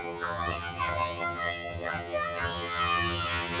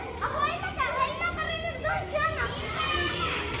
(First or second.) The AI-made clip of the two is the first